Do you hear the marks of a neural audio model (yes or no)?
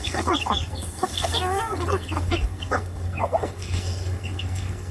yes